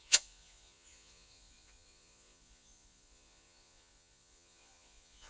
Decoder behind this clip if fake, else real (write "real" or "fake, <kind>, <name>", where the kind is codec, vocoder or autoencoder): fake, vocoder, Vocos